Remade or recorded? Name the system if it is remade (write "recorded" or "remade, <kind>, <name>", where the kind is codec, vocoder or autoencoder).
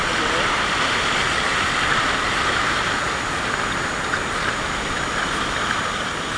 recorded